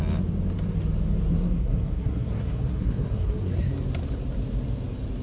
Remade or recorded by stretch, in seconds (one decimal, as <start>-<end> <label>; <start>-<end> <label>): 0.0-1.3 recorded; 1.3-3.7 remade; 3.7-5.2 recorded